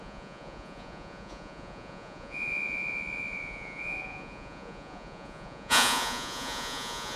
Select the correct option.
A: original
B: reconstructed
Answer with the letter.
B